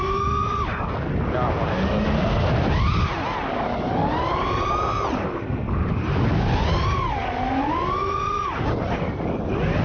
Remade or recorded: recorded